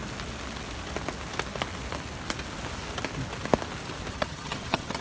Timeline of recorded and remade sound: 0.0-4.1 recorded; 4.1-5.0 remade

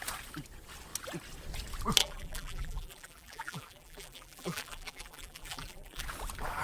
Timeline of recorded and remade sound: 0.0-2.0 recorded; 2.0-6.0 remade; 6.0-6.6 recorded

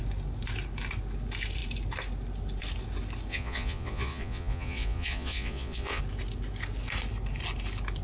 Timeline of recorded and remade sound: 0.0-3.3 recorded; 3.3-6.0 remade; 6.0-8.0 recorded